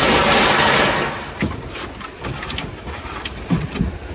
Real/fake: real